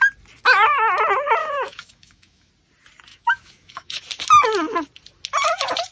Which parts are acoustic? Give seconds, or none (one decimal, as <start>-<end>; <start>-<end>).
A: 0.0-1.4; 2.5-3.1; 4.0-5.9